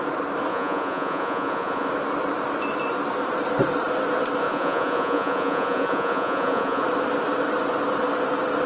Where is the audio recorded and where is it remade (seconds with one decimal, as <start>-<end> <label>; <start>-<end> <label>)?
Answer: 0.0-0.5 recorded; 0.5-1.9 remade; 1.9-4.4 recorded; 4.4-6.8 remade; 6.8-8.7 recorded